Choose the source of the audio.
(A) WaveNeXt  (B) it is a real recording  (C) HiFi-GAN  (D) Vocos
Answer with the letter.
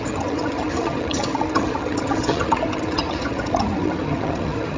C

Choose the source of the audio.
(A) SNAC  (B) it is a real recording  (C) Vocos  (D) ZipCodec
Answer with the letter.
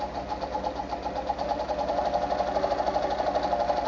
B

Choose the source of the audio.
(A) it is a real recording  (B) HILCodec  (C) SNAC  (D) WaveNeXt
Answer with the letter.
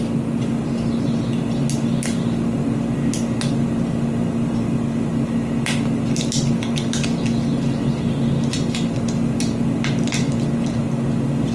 A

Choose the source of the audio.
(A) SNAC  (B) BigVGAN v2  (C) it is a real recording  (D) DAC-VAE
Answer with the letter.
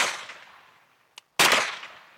C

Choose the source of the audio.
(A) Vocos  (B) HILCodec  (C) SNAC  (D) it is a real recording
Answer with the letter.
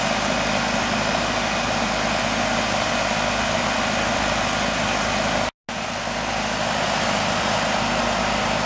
D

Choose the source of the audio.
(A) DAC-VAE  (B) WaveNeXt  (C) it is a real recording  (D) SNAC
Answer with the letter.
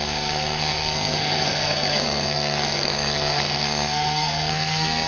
D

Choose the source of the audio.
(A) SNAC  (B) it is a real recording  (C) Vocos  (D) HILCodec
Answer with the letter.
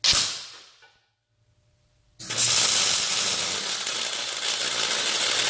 B